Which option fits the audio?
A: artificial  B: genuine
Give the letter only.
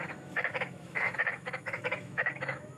A